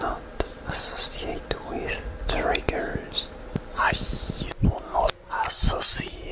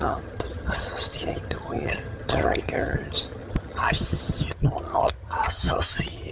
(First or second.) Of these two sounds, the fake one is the second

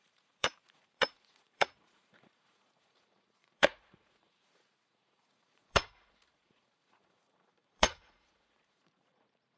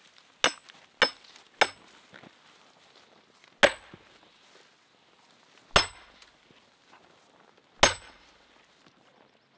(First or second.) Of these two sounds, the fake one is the first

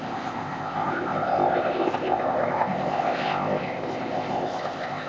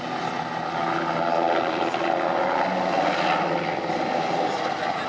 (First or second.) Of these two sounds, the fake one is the first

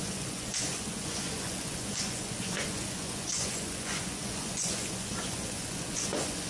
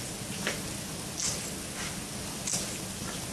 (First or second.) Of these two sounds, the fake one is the first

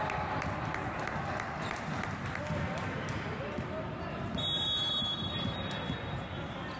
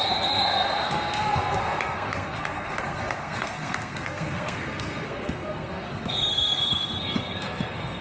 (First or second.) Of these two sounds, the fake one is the second